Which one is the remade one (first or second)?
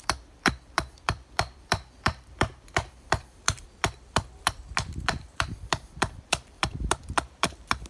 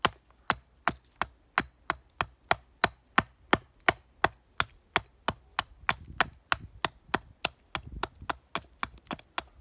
first